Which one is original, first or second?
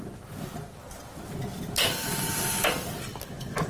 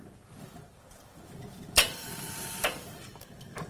first